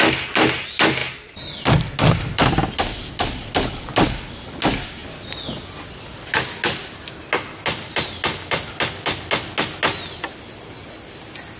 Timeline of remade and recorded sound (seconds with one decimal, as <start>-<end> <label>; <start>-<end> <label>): 0.0-11.6 recorded